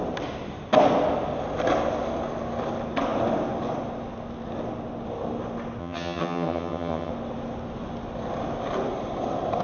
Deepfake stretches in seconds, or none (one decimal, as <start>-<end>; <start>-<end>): 5.8-7.1